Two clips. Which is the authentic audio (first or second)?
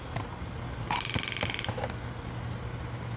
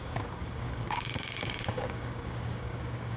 first